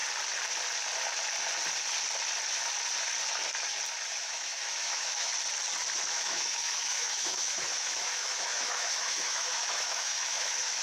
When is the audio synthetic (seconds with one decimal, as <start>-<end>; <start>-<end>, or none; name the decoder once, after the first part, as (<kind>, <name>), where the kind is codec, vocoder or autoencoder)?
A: 4.1-5.3 (autoencoder, DAC-VAE); 6.1-10.8